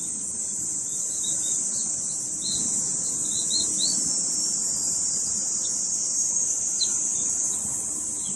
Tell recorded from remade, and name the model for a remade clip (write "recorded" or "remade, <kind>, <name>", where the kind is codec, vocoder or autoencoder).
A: recorded